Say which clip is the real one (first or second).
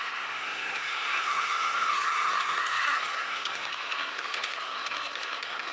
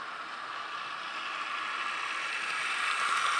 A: second